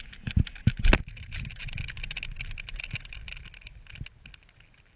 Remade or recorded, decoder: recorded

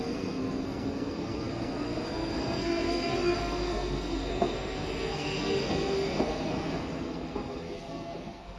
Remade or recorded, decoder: remade, codec, SNAC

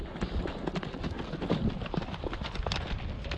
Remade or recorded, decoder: recorded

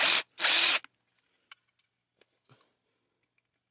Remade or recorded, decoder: recorded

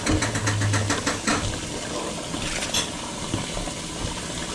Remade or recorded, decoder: recorded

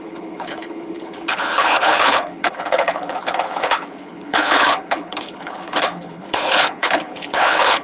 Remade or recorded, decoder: remade, codec, HILCodec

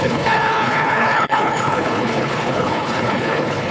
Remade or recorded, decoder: remade, codec, HILCodec